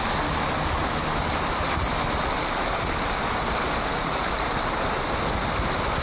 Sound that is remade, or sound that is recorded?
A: recorded